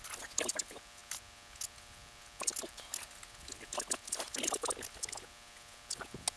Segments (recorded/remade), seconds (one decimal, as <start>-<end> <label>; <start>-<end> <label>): 0.0-6.4 recorded